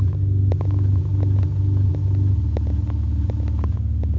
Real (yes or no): yes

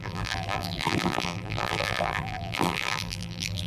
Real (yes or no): no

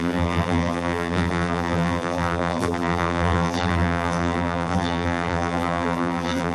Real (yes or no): no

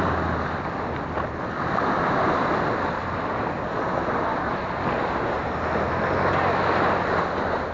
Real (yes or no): yes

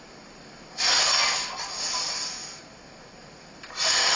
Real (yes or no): yes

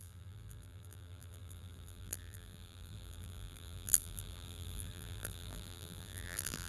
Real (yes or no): no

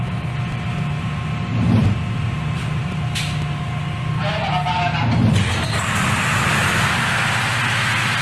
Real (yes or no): yes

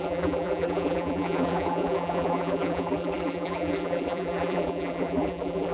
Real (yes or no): no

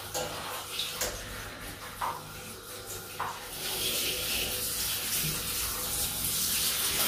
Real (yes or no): yes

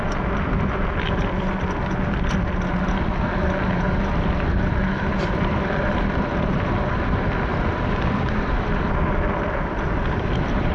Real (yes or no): no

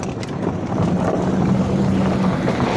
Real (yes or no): yes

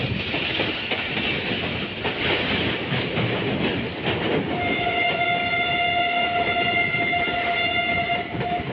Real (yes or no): yes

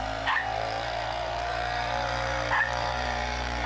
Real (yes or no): no